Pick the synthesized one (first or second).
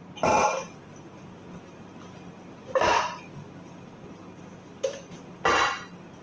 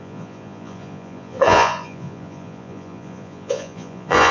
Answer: second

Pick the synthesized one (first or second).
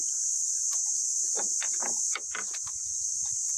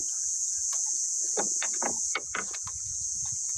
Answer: second